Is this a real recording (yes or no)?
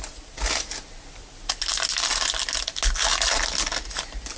yes